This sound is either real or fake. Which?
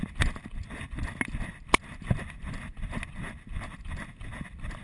real